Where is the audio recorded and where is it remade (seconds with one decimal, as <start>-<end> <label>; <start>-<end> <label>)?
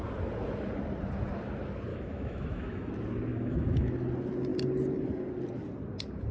0.0-1.9 recorded; 1.9-2.9 remade; 2.9-3.3 recorded; 3.3-3.9 remade; 3.9-6.3 recorded